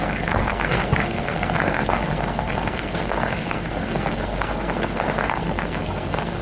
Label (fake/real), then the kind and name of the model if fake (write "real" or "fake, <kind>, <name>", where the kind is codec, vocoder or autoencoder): fake, codec, SNAC